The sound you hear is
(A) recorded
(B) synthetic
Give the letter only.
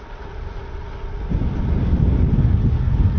A